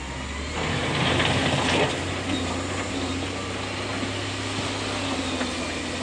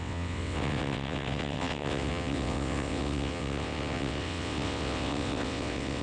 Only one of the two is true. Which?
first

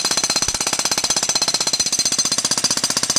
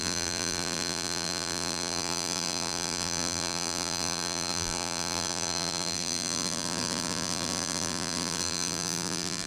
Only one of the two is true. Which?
first